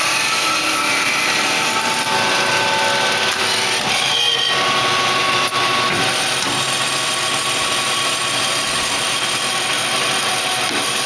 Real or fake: real